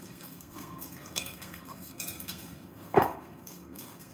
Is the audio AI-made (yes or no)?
yes